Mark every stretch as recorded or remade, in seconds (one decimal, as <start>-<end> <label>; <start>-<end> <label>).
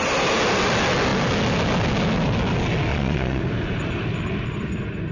0.0-2.9 recorded; 2.9-3.4 remade; 3.4-5.1 recorded